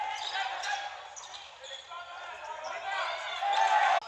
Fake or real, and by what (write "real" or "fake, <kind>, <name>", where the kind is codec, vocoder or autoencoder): real